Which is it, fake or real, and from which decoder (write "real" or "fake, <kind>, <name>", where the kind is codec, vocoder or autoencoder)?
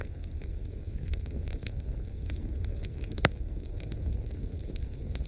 fake, codec, SNAC